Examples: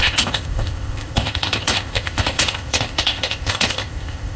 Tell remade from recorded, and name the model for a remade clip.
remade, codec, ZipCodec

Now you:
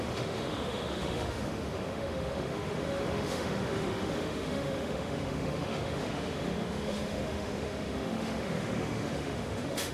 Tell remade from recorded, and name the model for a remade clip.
remade, autoencoder, DAC-VAE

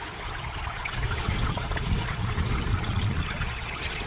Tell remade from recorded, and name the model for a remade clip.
remade, vocoder, Vocos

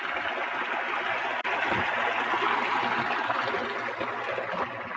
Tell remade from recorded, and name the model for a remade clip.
recorded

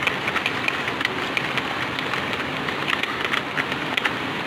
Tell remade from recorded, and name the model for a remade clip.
recorded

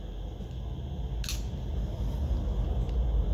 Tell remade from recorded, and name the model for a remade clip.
recorded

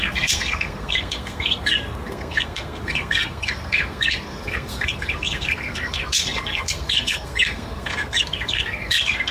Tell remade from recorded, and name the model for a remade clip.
remade, codec, SNAC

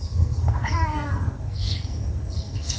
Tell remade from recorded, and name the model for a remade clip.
remade, codec, SNAC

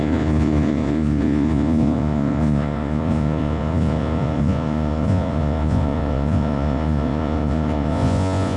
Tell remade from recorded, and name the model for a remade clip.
remade, vocoder, Vocos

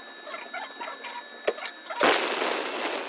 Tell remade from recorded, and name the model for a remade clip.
recorded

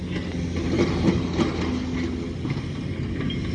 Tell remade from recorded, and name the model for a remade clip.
recorded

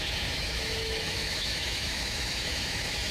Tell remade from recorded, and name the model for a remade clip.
remade, autoencoder, DAC-VAE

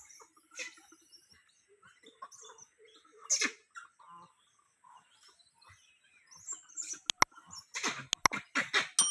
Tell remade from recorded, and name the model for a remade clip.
recorded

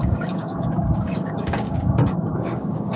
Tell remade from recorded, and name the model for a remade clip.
remade, codec, DAC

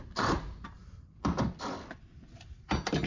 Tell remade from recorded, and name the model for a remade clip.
recorded